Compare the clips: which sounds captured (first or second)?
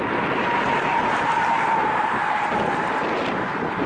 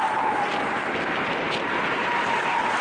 first